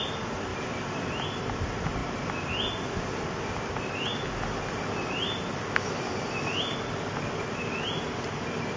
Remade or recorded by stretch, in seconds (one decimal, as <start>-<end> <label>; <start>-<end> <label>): 0.0-8.8 recorded